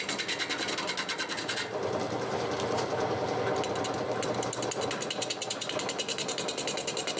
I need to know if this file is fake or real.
real